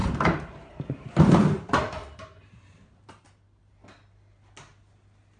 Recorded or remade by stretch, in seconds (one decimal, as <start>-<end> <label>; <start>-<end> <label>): 0.0-3.2 remade; 3.2-5.4 recorded

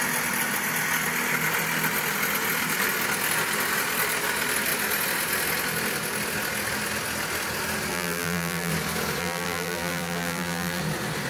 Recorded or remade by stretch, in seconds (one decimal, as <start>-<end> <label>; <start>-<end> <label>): 0.0-7.9 recorded; 7.9-8.7 remade; 8.7-9.2 recorded; 9.2-10.8 remade; 10.8-11.3 recorded

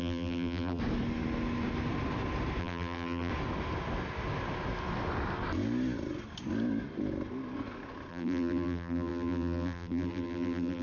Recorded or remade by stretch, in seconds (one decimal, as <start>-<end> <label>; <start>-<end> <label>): 0.0-0.8 remade; 0.8-2.6 recorded; 2.6-3.3 remade; 3.3-8.1 recorded; 8.1-10.8 remade

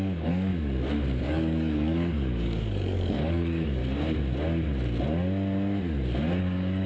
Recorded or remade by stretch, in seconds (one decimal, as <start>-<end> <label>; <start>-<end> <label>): 0.0-0.5 remade; 0.5-1.2 recorded; 1.2-3.8 remade; 3.8-6.4 recorded; 6.4-6.9 remade